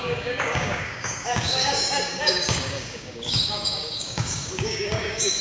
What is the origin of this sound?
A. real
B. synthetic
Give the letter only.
B